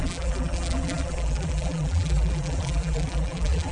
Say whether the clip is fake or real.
fake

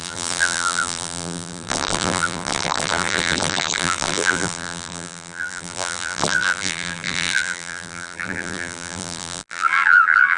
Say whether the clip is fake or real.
fake